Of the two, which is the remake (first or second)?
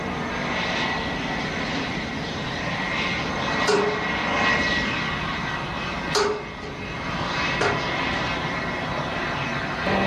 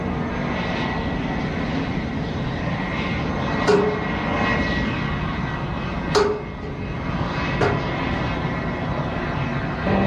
first